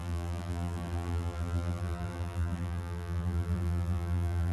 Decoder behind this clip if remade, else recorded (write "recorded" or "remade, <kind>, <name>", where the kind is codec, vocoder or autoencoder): remade, vocoder, BigVGAN v2